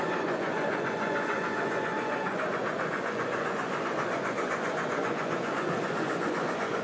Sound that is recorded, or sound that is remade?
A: remade